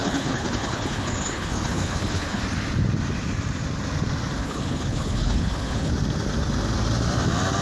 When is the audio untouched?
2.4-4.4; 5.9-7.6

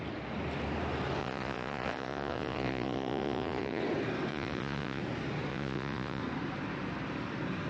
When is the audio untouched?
0.0-1.2; 3.8-4.3; 5.0-5.5; 6.2-7.7

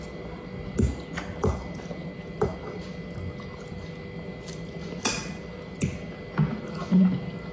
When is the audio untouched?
0.0-7.5

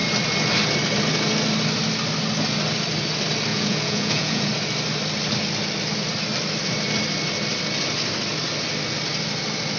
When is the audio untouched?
0.0-3.5; 4.5-9.8

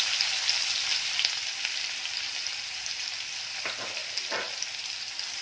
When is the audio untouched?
0.0-5.4

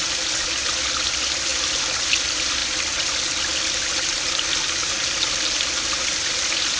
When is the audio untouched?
0.0-6.8

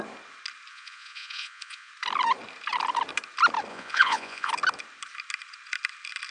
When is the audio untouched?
0.0-0.7; 1.9-3.7; 4.5-6.3